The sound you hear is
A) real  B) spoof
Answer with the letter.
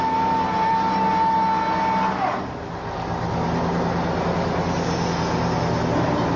A